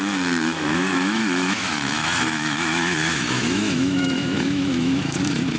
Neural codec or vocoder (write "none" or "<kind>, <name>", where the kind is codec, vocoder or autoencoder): autoencoder, DAC-VAE